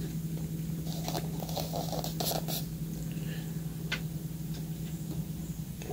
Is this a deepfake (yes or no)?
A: no